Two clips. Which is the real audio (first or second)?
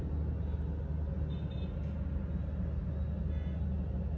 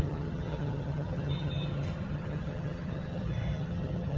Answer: first